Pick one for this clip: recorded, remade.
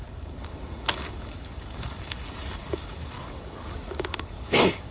remade